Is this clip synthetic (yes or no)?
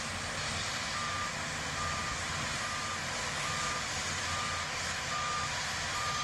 no